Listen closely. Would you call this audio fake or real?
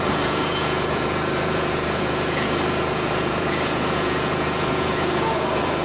fake